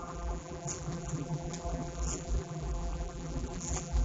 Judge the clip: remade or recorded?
remade